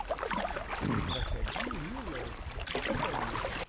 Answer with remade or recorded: recorded